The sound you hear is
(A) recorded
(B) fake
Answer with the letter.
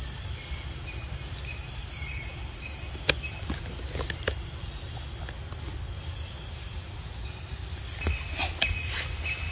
A